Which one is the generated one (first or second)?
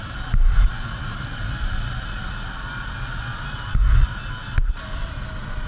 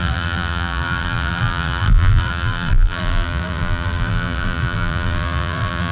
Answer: second